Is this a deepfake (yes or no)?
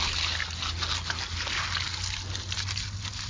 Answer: no